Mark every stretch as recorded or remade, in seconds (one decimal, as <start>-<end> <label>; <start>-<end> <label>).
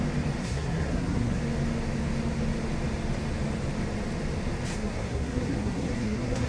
0.0-0.4 recorded; 0.4-1.4 remade; 1.4-4.7 recorded; 4.7-6.5 remade